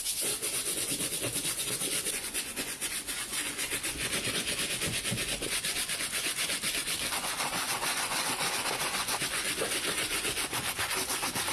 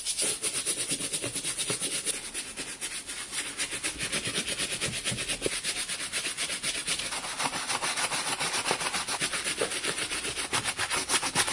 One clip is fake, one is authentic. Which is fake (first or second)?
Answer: first